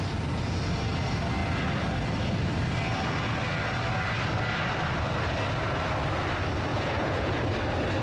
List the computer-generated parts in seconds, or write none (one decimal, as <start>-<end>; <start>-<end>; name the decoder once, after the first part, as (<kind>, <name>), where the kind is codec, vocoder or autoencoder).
6.7-7.3 (vocoder, Vocos)